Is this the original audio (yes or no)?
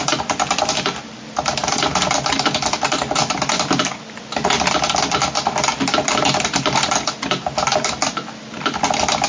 yes